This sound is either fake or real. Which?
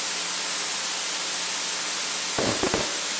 real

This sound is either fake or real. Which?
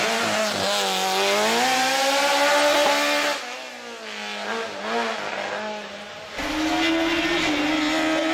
real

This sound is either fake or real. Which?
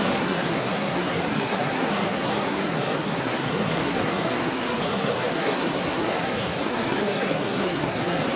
fake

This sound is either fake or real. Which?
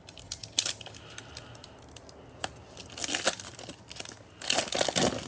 real